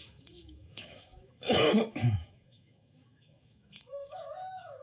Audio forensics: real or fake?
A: fake